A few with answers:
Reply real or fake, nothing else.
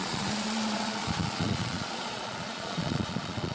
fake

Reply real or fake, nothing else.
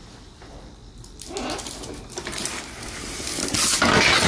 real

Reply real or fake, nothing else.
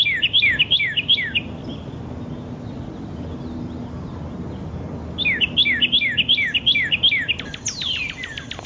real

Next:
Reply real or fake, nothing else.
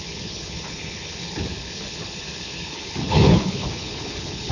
fake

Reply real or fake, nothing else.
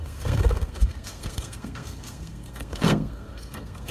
fake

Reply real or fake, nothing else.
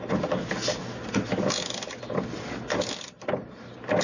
real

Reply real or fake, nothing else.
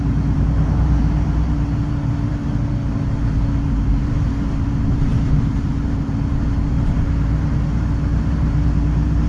fake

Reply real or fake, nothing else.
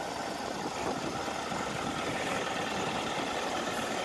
real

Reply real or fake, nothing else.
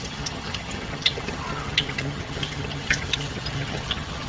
fake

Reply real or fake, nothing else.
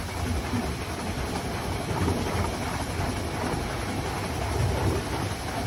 real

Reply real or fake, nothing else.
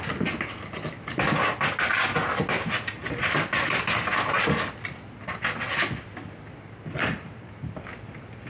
real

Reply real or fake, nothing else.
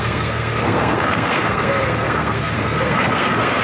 fake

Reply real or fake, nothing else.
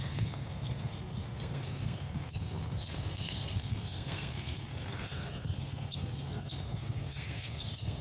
fake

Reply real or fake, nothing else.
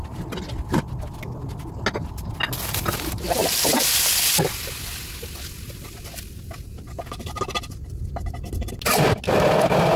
real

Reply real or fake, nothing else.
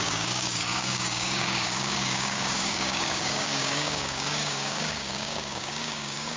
fake